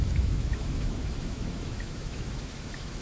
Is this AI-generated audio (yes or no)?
yes